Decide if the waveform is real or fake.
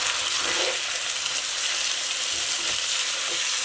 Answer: real